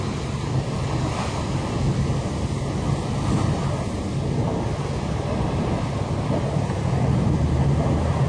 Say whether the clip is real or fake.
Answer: real